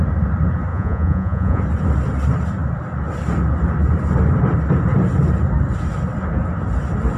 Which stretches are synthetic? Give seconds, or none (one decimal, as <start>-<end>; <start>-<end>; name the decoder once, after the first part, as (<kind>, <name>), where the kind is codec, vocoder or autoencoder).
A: 0.7-1.6 (vocoder, Vocos)